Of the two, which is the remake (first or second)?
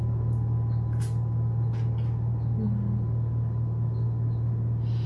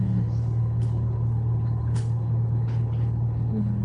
second